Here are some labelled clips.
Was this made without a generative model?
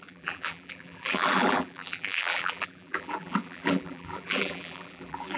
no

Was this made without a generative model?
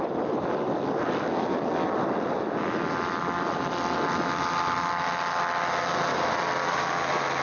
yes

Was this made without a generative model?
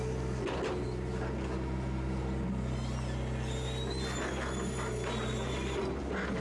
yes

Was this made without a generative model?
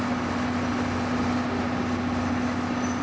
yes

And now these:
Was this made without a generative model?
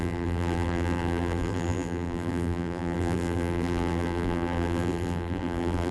no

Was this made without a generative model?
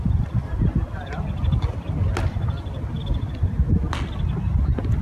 yes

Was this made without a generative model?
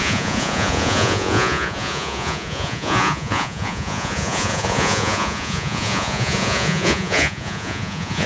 no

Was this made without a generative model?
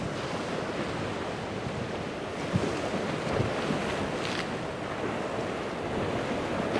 yes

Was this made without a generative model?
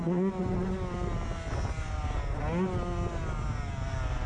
yes